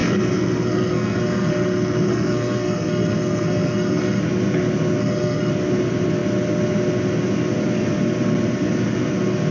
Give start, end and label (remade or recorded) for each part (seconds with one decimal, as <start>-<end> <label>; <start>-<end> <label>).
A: 0.0-4.2 remade; 4.2-5.0 recorded; 5.0-5.5 remade; 5.5-9.5 recorded